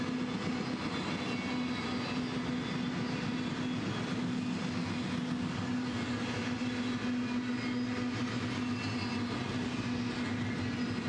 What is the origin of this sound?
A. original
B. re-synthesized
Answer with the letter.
A